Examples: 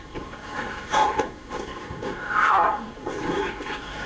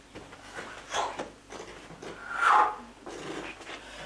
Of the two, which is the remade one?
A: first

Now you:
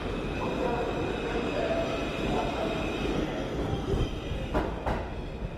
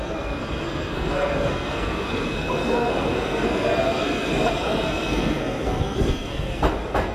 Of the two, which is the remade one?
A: second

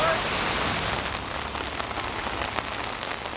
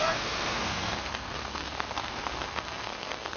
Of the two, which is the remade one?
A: second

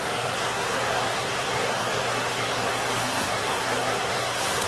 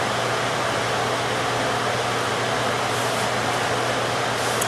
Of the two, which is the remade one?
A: first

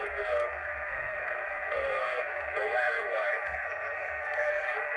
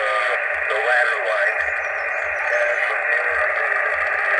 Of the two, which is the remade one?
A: first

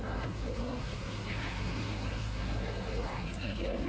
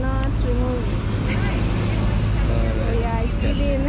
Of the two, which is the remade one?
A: first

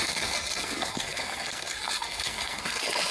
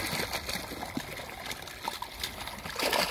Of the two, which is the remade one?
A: first